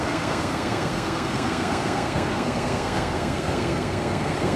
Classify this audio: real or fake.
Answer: fake